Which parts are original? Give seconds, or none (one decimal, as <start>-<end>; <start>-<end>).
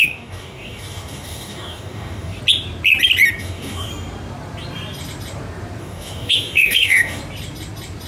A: 2.4-3.4; 3.9-5.8; 7.2-8.1